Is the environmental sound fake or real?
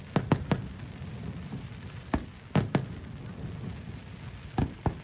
real